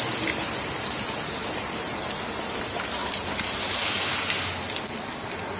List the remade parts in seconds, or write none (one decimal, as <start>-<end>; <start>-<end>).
none